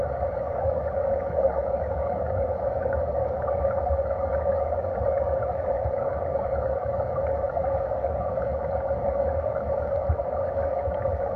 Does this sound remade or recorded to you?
remade